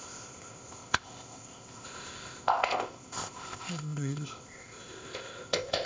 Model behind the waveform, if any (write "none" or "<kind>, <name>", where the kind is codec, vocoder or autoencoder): codec, ZipCodec